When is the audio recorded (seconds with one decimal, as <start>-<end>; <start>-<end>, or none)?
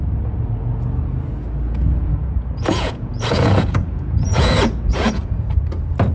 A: 0.0-1.8; 5.5-6.1